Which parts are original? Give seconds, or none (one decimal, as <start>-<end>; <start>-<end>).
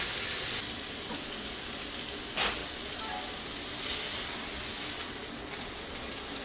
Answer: 0.0-6.4